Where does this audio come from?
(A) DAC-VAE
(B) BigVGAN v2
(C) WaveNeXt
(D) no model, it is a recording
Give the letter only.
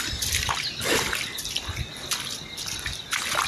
D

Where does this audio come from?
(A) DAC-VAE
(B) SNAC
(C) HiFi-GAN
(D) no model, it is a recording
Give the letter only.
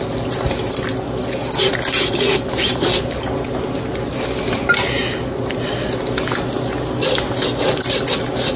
D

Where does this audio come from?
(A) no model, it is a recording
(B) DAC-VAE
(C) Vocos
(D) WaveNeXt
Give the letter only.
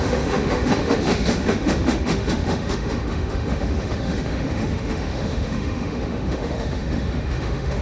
B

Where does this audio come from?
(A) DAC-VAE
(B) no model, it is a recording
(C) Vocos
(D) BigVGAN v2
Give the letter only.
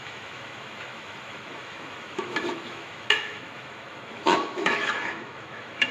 A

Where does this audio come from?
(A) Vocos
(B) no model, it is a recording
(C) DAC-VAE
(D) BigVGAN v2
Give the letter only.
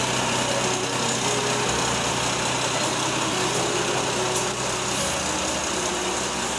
B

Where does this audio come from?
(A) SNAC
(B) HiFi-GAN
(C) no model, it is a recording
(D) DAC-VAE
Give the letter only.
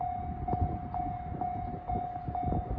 C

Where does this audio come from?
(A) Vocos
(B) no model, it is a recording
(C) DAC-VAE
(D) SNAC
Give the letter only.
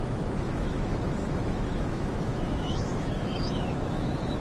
C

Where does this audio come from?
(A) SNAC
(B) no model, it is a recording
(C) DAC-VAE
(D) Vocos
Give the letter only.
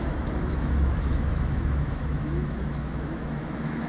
C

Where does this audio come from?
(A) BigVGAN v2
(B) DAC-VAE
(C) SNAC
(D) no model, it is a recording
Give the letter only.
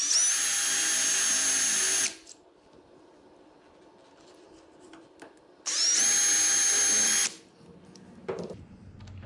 D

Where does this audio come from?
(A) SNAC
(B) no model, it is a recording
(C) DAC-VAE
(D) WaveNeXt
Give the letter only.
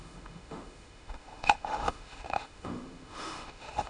C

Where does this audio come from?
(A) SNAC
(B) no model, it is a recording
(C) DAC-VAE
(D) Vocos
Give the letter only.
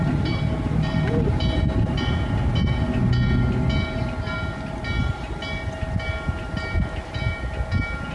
B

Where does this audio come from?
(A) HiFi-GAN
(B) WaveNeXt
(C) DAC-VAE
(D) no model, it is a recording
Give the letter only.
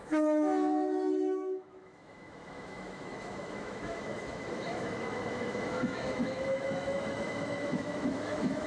C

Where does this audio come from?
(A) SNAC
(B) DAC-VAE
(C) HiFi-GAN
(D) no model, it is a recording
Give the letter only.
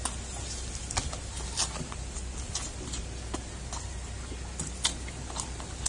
D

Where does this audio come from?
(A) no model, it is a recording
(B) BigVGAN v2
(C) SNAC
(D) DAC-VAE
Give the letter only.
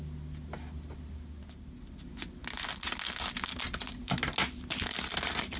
A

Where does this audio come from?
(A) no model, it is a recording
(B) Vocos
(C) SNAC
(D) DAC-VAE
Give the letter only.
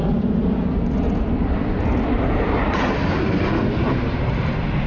A